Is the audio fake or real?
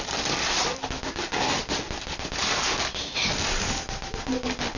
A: real